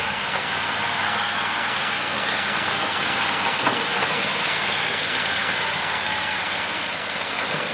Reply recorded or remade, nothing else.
remade